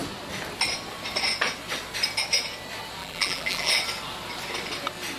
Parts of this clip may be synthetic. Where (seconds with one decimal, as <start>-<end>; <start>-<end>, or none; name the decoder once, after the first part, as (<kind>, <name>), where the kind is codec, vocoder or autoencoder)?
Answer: 3.0-3.7 (vocoder, BigVGAN v2)